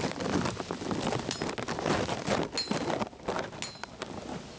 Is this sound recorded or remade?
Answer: recorded